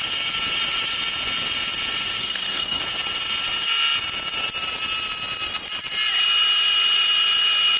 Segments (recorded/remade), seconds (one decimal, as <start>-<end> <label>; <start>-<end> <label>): 0.0-2.2 recorded; 2.2-2.8 remade; 2.8-7.8 recorded